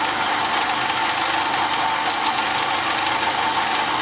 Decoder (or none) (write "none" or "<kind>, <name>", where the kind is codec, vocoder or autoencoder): none